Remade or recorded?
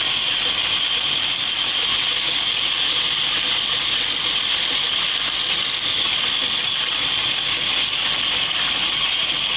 recorded